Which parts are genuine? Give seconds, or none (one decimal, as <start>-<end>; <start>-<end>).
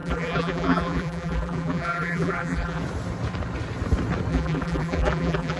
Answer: 2.8-4.3